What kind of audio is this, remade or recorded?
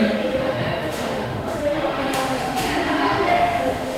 remade